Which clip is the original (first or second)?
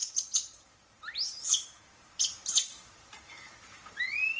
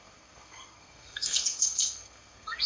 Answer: first